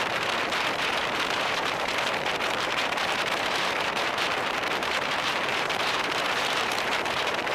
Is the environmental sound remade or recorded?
remade